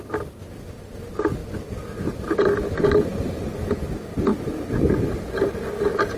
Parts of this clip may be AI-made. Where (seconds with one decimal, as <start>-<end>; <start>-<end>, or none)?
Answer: 1.4-3.9; 4.3-5.6